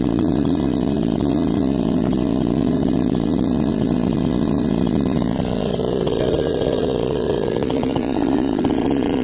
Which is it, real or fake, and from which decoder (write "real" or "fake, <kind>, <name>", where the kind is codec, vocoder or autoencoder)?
fake, vocoder, Vocos